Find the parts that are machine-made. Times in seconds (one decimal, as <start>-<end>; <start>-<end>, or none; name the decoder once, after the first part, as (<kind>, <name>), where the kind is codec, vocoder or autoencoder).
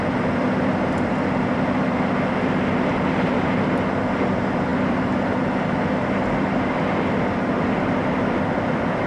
none